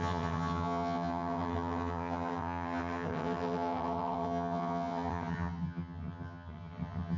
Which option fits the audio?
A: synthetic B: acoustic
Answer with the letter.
A